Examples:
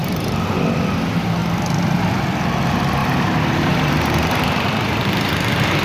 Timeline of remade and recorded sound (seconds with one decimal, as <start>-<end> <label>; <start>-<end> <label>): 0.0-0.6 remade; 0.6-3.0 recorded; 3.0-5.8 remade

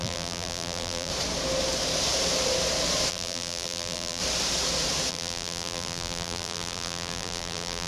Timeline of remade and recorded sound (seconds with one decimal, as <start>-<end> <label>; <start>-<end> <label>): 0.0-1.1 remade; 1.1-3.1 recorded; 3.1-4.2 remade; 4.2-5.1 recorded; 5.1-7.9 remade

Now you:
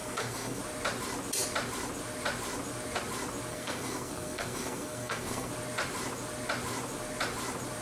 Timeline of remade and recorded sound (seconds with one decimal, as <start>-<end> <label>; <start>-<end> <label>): 0.0-0.6 remade; 0.6-3.5 recorded; 3.5-5.5 remade; 5.5-7.8 recorded

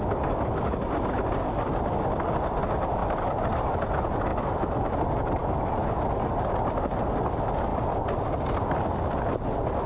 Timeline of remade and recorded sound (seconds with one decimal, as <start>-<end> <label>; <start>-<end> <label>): 0.0-3.0 recorded; 3.0-3.8 remade; 3.8-7.7 recorded; 7.7-9.1 remade; 9.1-9.9 recorded

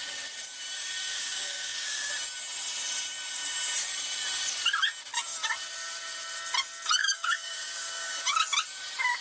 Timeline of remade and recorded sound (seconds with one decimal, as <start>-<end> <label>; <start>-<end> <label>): 0.0-1.1 recorded; 1.1-2.1 remade; 2.1-7.0 recorded; 7.0-8.2 remade; 8.2-9.2 recorded

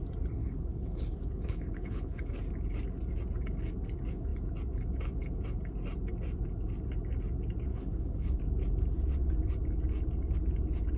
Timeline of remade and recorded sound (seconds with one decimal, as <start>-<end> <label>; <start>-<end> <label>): 0.0-0.4 recorded; 0.4-2.3 remade; 2.3-7.7 recorded; 7.7-8.4 remade; 8.4-11.0 recorded

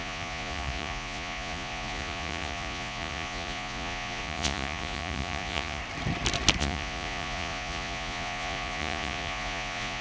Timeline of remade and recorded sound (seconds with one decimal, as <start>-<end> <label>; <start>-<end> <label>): 0.0-5.8 remade; 5.8-6.6 recorded; 6.6-10.0 remade

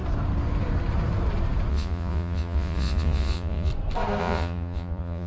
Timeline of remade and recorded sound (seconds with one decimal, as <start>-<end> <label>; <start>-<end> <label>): 0.0-1.7 recorded; 1.7-3.7 remade; 3.7-4.2 recorded; 4.2-5.3 remade